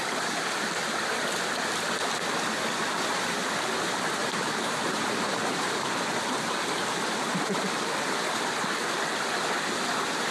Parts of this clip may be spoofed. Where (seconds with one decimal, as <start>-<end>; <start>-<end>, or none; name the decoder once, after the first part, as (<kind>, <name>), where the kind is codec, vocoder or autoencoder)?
4.2-5.9 (vocoder, BigVGAN v2)